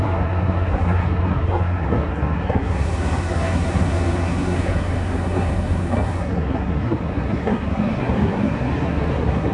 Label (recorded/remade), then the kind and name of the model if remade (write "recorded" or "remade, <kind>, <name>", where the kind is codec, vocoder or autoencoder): remade, codec, SNAC